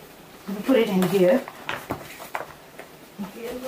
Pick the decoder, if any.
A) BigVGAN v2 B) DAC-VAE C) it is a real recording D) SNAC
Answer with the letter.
A